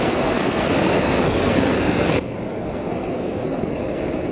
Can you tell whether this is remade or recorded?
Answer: remade